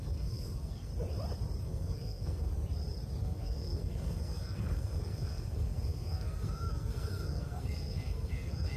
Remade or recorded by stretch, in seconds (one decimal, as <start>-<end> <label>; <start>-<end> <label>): 0.0-0.9 remade; 0.9-1.6 recorded; 1.6-2.5 remade; 2.5-3.2 recorded; 3.2-8.8 remade